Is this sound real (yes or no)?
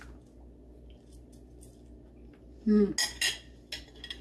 yes